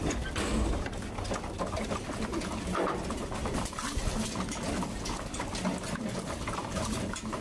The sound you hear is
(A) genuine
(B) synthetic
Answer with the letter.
A